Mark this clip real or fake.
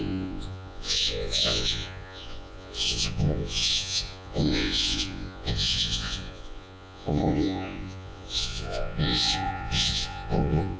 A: fake